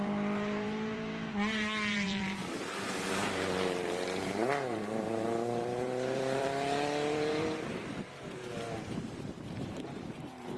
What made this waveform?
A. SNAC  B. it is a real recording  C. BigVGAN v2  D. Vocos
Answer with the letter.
C